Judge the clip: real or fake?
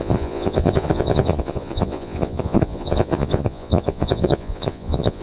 fake